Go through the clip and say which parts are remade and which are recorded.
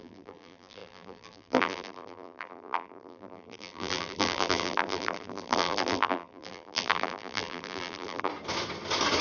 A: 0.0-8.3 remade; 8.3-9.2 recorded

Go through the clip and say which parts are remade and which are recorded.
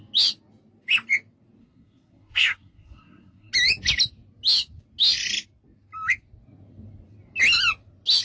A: 0.0-1.6 recorded; 1.6-3.5 remade; 3.5-8.2 recorded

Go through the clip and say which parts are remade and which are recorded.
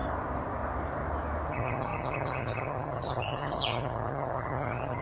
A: 0.0-1.5 recorded; 1.5-5.0 remade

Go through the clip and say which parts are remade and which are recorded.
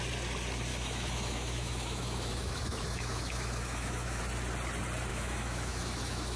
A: 0.0-0.7 recorded; 0.7-4.2 remade; 4.2-5.1 recorded; 5.1-6.4 remade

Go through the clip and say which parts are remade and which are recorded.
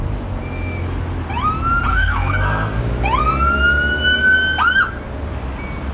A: 0.0-1.9 recorded; 1.9-2.8 remade; 2.8-5.9 recorded